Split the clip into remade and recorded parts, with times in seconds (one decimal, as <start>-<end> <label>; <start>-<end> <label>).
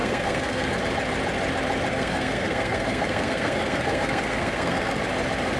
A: 0.0-0.8 remade; 0.8-1.9 recorded; 1.9-5.0 remade; 5.0-5.6 recorded